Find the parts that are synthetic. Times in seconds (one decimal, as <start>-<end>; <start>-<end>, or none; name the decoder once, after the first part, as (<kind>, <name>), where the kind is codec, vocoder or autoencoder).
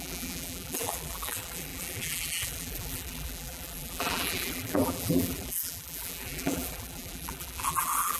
0.0-8.2 (vocoder, BigVGAN v2)